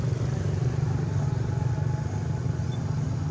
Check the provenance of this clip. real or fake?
real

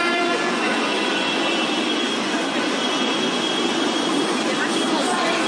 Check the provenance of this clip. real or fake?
fake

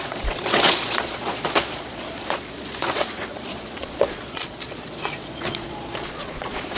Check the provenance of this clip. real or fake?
fake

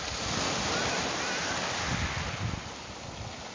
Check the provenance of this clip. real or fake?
real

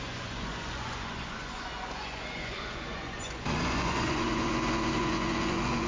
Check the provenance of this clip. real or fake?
fake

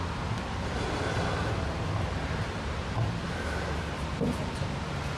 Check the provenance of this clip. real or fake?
real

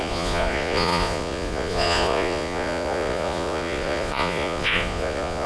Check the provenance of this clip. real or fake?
fake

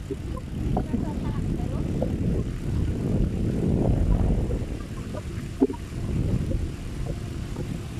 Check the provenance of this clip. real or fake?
real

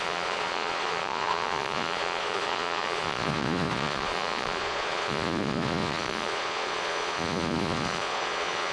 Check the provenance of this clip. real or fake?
fake